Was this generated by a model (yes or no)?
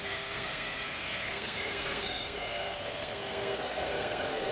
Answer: yes